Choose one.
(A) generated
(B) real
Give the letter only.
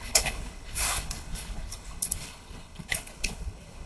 A